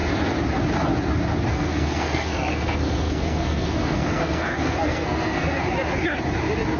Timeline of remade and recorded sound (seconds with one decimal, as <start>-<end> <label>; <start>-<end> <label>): 0.0-1.5 recorded; 1.5-5.6 remade; 5.6-6.8 recorded